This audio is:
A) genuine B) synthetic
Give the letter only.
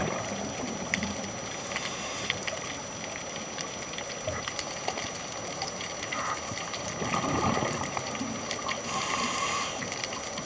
A